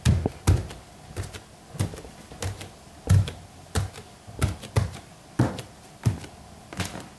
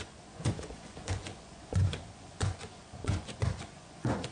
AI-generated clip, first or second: second